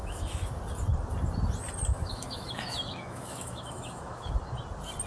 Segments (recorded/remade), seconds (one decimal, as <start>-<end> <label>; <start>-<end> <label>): 0.0-0.5 remade; 0.5-1.9 recorded; 1.9-4.3 remade; 4.3-5.1 recorded